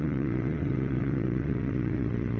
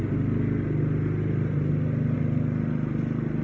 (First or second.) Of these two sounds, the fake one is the first